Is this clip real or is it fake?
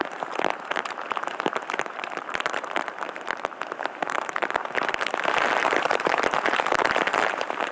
fake